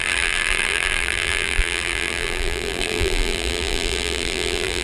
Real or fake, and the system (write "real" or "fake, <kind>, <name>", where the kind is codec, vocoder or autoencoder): fake, vocoder, BigVGAN v2